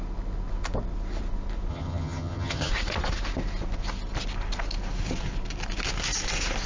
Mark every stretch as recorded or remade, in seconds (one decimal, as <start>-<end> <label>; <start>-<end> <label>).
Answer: 0.0-1.7 recorded; 1.7-2.7 remade; 2.7-6.7 recorded

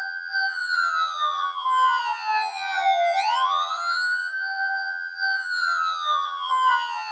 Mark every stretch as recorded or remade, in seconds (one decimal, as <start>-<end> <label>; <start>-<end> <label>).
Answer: 0.0-7.1 remade

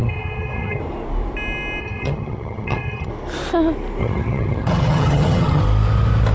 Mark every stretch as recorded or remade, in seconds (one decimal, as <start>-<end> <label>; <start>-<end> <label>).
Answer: 0.0-0.8 remade; 0.8-1.8 recorded; 1.8-3.1 remade; 3.1-4.0 recorded; 4.0-5.6 remade; 5.6-6.3 recorded

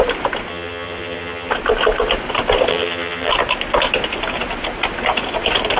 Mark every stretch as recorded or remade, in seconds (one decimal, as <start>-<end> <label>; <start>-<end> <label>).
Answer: 0.0-0.5 recorded; 0.5-1.5 remade; 1.5-2.7 recorded; 2.7-3.3 remade; 3.3-5.8 recorded

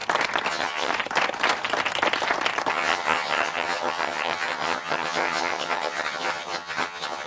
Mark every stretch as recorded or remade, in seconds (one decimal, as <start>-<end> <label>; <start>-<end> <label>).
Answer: 0.0-0.5 recorded; 0.5-0.9 remade; 0.9-2.7 recorded; 2.7-7.3 remade

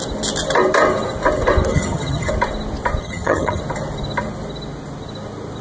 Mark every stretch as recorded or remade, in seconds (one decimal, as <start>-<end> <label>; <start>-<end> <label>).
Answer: 0.0-1.7 recorded; 1.7-2.3 remade; 2.3-3.0 recorded; 3.0-3.6 remade; 3.6-5.6 recorded

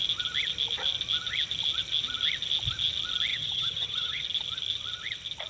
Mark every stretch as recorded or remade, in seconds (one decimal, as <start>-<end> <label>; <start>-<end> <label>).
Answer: 0.0-3.3 recorded; 3.3-4.2 remade; 4.2-5.5 recorded

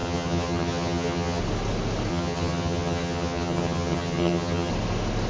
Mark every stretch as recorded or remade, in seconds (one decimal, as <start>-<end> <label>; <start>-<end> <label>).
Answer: 0.0-1.4 remade; 1.4-2.1 recorded; 2.1-4.7 remade; 4.7-5.3 recorded